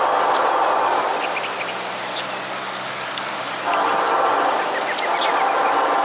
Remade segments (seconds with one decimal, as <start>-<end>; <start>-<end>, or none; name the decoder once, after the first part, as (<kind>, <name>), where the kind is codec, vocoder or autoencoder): 2.6-3.5 (codec, DAC)